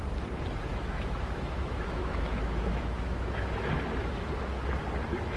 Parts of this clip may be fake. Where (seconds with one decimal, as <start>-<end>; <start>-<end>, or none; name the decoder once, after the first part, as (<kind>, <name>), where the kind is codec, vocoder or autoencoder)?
0.7-3.7 (autoencoder, DAC-VAE)